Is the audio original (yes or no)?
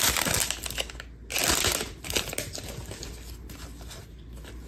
yes